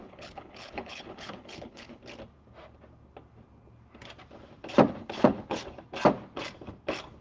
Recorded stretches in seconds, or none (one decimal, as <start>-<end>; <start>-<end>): 2.0-5.0; 5.6-7.2